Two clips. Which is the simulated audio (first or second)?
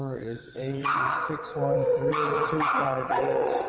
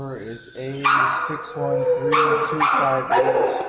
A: first